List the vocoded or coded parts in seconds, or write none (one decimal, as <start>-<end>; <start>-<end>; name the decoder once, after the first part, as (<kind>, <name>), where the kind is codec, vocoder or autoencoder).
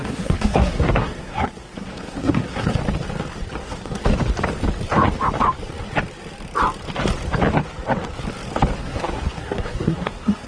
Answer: 0.0-2.8 (codec, SNAC); 3.6-4.1; 8.8-10.5